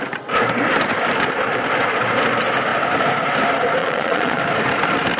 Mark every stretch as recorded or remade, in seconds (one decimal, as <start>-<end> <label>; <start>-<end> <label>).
0.0-3.8 recorded; 3.8-4.4 remade; 4.4-5.2 recorded

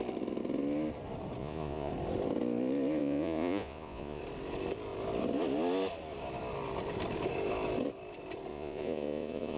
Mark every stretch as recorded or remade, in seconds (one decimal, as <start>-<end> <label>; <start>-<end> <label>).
0.0-1.4 recorded; 1.4-1.9 remade; 1.9-3.0 recorded; 3.0-4.2 remade; 4.2-8.5 recorded; 8.5-9.6 remade

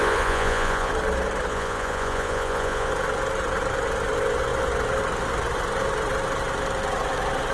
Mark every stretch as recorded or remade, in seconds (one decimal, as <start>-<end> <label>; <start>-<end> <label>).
0.0-0.9 remade; 0.9-1.5 recorded; 1.5-2.9 remade; 2.9-7.5 recorded

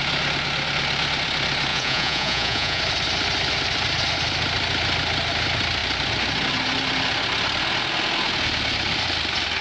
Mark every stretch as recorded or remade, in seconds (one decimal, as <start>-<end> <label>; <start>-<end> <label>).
0.0-1.7 recorded; 1.7-2.8 remade; 2.8-9.6 recorded